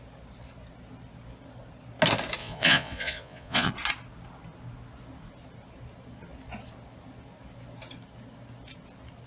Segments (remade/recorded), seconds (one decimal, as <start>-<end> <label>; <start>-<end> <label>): 0.0-2.4 recorded; 2.4-3.7 remade; 3.7-9.3 recorded